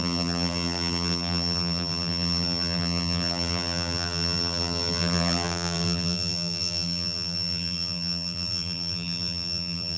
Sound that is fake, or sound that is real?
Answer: fake